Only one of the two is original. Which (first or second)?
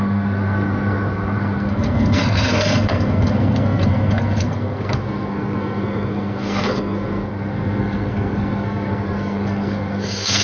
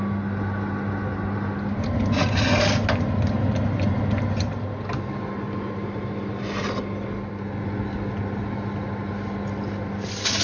second